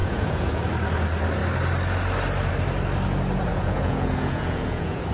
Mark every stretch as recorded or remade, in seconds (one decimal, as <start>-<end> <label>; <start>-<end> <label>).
0.0-0.6 remade; 0.6-3.5 recorded; 3.5-5.1 remade